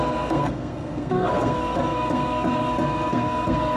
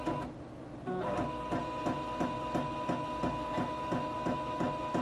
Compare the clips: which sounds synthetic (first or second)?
first